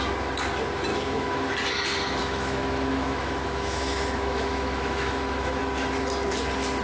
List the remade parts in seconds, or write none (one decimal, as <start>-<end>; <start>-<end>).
0.9-1.5; 2.2-5.6